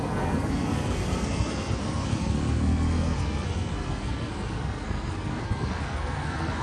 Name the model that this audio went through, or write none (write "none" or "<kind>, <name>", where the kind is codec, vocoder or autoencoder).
codec, SNAC